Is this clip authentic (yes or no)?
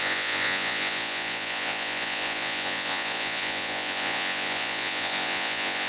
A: no